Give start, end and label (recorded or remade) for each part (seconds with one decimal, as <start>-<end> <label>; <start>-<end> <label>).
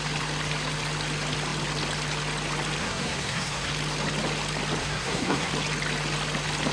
0.0-2.8 recorded; 2.8-3.7 remade; 3.7-4.8 recorded; 4.8-5.5 remade; 5.5-6.7 recorded